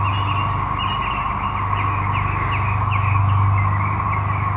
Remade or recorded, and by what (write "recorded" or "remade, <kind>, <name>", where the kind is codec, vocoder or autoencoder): recorded